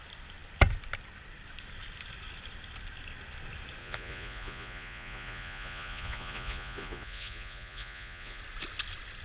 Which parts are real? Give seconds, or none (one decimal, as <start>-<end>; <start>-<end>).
0.0-3.8; 8.4-9.2